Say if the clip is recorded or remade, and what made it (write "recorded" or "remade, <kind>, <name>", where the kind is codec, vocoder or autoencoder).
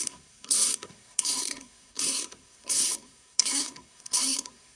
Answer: remade, codec, SNAC